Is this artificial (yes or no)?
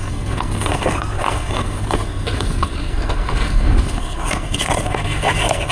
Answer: yes